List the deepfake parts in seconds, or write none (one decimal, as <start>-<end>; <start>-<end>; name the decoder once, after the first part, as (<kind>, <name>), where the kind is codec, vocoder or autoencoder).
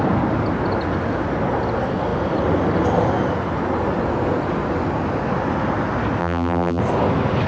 6.2-6.8 (vocoder, BigVGAN v2)